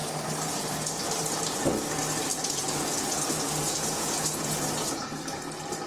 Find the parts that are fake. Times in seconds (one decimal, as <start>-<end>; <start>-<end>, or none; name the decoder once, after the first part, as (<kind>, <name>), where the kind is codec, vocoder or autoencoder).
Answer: 2.3-5.4 (vocoder, Vocos)